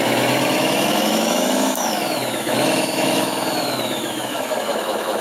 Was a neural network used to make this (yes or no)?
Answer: yes